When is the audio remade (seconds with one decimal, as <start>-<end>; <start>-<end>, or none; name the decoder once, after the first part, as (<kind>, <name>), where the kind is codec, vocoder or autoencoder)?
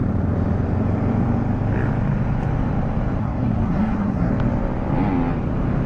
3.2-4.3 (codec, SNAC)